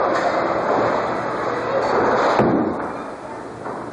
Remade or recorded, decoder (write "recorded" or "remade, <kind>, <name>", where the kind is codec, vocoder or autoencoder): recorded